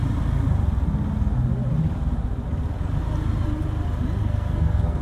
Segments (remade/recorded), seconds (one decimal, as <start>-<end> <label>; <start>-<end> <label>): 0.0-4.2 recorded; 4.2-5.0 remade

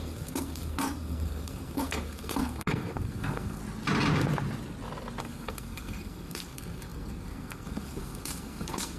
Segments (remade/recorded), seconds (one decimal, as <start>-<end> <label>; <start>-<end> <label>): 0.0-3.6 remade; 3.6-5.2 recorded; 5.2-9.0 remade

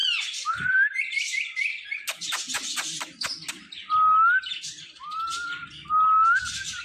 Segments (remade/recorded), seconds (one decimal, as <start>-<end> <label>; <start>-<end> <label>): 0.0-6.8 recorded

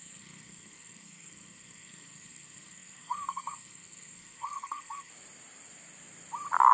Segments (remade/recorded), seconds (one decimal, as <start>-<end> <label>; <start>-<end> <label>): 0.0-5.1 remade; 5.1-6.7 recorded

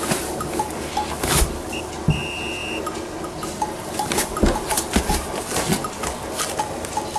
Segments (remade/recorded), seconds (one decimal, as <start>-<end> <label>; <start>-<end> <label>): 0.0-7.2 recorded